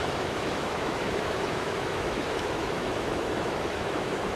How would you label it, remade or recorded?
remade